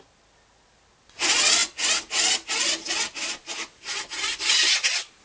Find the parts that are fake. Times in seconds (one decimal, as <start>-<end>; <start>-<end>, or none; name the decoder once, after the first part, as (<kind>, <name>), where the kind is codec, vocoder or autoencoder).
none